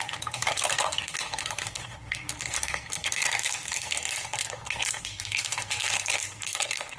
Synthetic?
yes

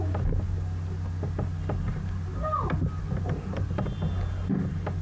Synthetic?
no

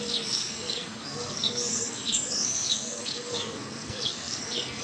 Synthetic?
yes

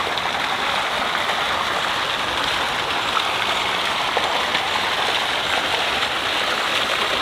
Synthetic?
no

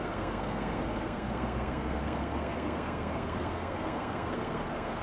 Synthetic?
yes